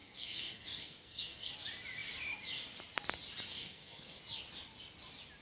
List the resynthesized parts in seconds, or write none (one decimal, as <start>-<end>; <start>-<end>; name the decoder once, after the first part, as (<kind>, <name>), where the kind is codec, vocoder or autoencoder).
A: 0.0-1.5 (codec, SNAC); 3.5-4.2